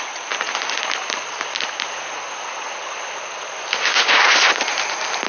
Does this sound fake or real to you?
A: real